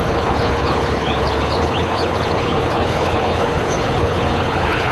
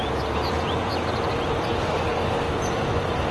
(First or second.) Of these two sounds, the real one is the second